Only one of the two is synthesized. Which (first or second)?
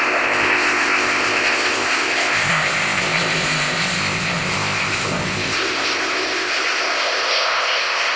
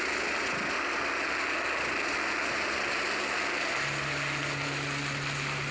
first